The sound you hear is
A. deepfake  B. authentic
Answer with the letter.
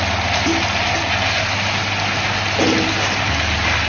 B